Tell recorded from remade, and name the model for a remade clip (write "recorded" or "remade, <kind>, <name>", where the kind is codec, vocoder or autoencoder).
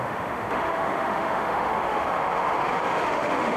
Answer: remade, autoencoder, DAC-VAE